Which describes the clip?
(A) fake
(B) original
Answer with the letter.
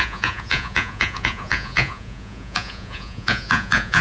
A